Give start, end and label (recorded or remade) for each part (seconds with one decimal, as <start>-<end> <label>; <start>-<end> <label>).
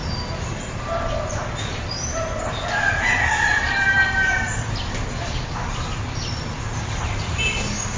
0.0-0.7 remade; 0.7-1.7 recorded; 1.7-5.5 remade; 5.5-8.0 recorded